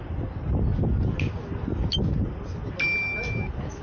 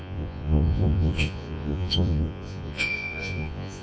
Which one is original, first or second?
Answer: first